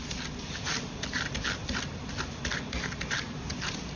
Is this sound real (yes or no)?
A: yes